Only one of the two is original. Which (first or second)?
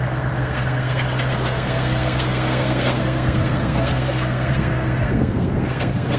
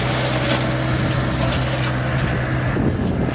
second